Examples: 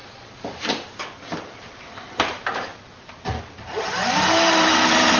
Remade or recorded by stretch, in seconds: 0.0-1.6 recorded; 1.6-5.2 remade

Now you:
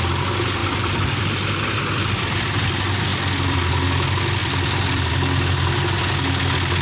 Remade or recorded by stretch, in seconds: 0.0-0.6 recorded; 0.6-1.7 remade; 1.7-3.1 recorded; 3.1-3.7 remade; 3.7-4.4 recorded; 4.4-5.1 remade; 5.1-6.8 recorded

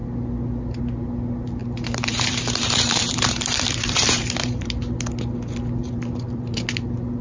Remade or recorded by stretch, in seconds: 0.0-1.6 recorded; 1.6-4.7 remade; 4.7-5.8 recorded; 5.8-6.6 remade; 6.6-7.2 recorded

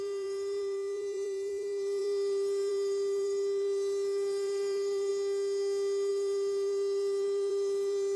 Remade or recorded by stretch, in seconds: 0.0-5.1 remade; 5.1-6.1 recorded; 6.1-8.2 remade

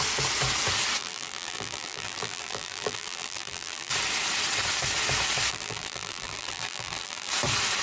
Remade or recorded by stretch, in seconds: 0.0-1.0 recorded; 1.0-3.9 remade; 3.9-5.5 recorded; 5.5-7.3 remade; 7.3-7.8 recorded

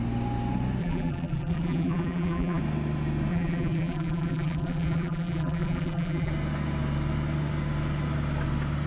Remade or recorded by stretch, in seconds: 0.0-0.8 recorded; 0.8-2.6 remade; 2.6-3.3 recorded; 3.3-6.3 remade; 6.3-8.9 recorded